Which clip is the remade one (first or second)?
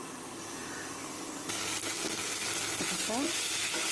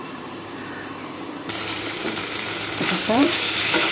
second